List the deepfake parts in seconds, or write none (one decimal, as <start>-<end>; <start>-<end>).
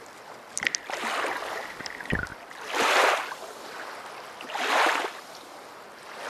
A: none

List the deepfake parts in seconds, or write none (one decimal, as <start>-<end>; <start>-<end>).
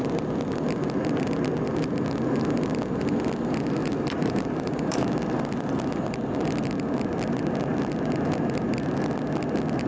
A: 3.8-5.1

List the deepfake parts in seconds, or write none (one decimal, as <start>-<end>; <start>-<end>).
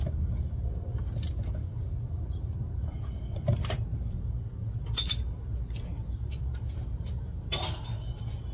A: none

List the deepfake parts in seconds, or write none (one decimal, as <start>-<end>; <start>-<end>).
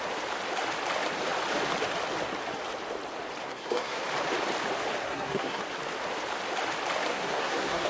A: 3.4-4.0; 5.0-5.6; 7.1-7.9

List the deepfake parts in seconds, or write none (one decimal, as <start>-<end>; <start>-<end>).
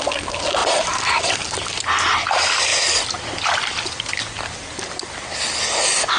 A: none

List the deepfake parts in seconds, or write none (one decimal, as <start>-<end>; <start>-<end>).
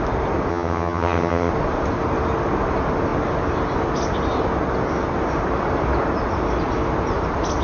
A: 0.5-1.5